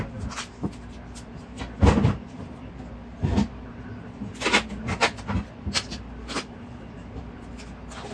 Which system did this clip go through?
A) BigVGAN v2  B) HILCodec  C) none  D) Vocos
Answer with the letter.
C